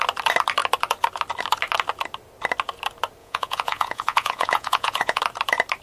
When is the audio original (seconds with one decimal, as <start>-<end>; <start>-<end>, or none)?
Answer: 0.0-3.2; 5.2-5.8